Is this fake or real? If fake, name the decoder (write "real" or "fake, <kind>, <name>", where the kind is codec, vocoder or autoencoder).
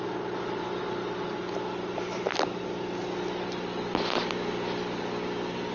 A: real